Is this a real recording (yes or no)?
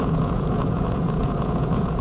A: no